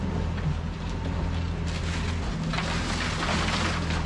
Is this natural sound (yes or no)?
yes